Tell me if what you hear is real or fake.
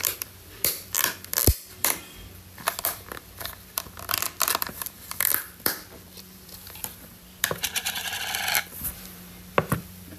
fake